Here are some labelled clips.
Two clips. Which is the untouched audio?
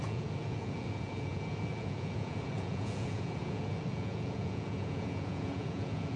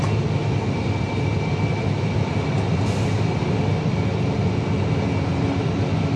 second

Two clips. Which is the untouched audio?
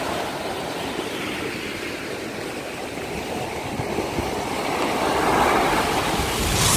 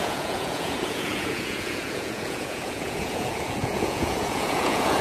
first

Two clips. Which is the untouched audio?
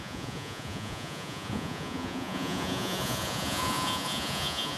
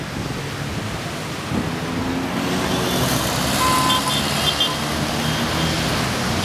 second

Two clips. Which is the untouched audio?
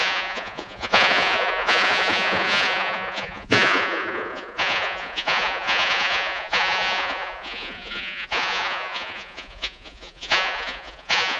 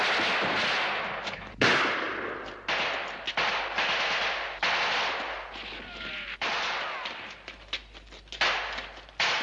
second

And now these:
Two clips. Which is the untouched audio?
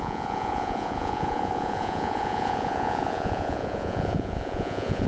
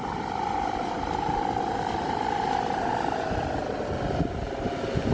second